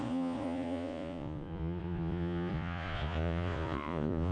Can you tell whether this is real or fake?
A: fake